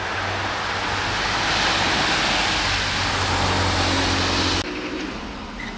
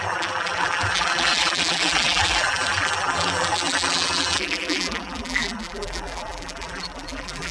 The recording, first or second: first